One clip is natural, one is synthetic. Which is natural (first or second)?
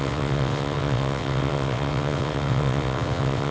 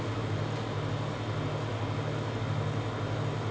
second